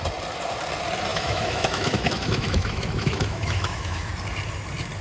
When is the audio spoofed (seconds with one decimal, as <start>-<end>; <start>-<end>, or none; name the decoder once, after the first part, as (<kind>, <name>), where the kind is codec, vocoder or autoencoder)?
1.1-4.1 (autoencoder, DAC-VAE)